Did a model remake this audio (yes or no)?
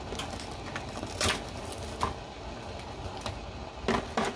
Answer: no